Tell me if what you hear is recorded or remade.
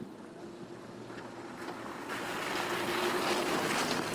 recorded